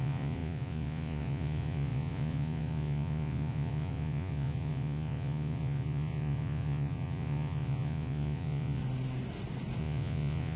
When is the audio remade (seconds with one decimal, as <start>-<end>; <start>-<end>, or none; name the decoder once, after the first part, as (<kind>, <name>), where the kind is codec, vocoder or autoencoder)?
0.0-8.8 (vocoder, Vocos); 9.8-10.6